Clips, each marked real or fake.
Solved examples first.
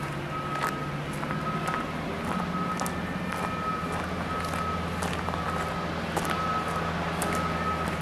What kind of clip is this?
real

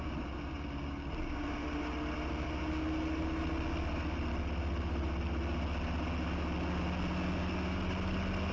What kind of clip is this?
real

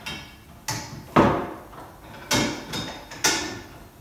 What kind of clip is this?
real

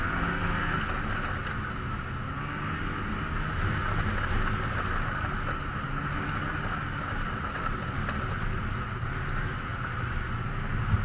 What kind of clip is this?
real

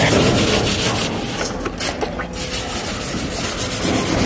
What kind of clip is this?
real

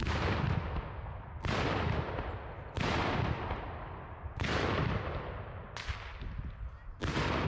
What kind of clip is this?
real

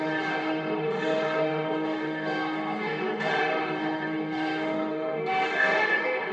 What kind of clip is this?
fake